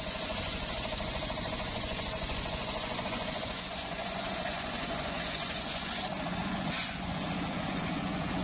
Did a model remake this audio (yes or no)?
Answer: yes